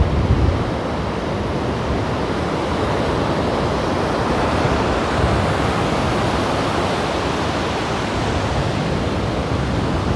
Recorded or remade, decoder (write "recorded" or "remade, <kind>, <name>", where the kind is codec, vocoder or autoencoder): recorded